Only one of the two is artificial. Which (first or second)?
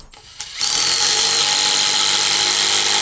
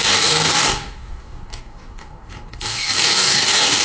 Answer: second